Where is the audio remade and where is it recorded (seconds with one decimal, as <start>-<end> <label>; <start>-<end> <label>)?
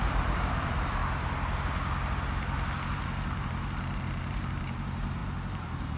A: 0.0-1.0 remade; 1.0-2.9 recorded; 2.9-6.0 remade